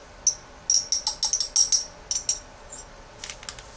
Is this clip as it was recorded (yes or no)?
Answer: yes